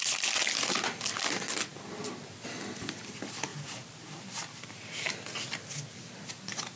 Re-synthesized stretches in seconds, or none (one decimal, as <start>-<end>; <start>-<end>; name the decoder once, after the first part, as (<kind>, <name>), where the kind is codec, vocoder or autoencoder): 3.5-4.5 (vocoder, BigVGAN v2)